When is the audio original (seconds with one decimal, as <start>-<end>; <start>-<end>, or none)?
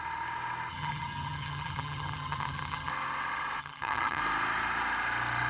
0.0-0.7; 2.9-3.6; 4.2-5.5